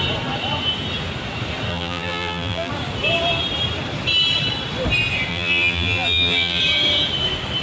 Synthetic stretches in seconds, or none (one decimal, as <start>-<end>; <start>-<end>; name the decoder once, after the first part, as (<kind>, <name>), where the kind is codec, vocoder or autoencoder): 1.7-2.7 (vocoder, BigVGAN v2); 5.3-6.6